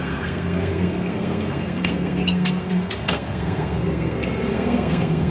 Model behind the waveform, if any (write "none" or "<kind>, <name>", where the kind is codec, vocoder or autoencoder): codec, SNAC